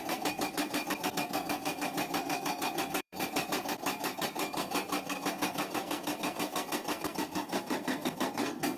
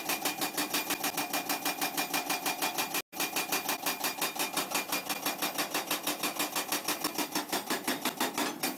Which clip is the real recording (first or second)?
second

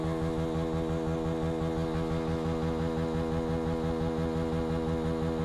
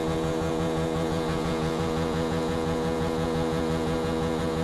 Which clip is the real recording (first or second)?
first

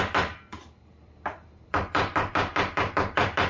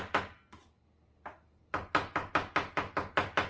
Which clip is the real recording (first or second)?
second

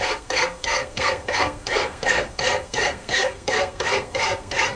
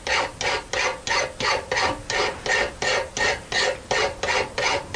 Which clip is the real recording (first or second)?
second